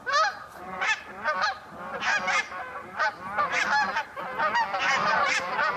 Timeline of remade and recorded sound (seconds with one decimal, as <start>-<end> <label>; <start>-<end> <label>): 0.0-5.8 recorded